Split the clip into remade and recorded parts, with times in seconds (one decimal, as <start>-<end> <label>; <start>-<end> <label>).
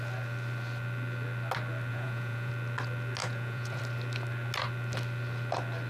0.0-1.9 recorded; 1.9-2.5 remade; 2.5-3.2 recorded; 3.2-3.8 remade; 3.8-5.9 recorded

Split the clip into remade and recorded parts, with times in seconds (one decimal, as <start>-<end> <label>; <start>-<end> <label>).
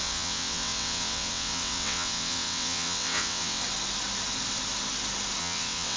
0.0-3.6 remade; 3.6-5.4 recorded; 5.4-6.0 remade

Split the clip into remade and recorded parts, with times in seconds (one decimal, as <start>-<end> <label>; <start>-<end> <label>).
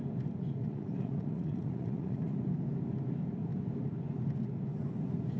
0.0-0.6 recorded; 0.6-2.4 remade; 2.4-5.4 recorded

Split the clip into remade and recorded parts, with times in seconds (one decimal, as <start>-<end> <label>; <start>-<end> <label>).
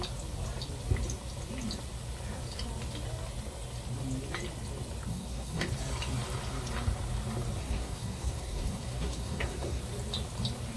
0.0-5.1 recorded; 5.1-5.7 remade; 5.7-7.6 recorded; 7.6-9.8 remade; 9.8-10.8 recorded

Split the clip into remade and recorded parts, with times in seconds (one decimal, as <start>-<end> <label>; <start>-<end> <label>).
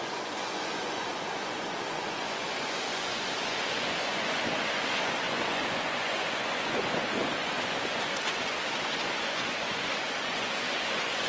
0.0-11.3 remade